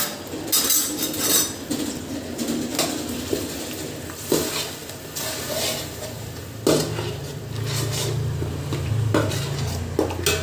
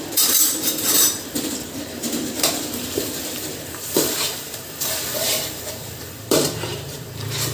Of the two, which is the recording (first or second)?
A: first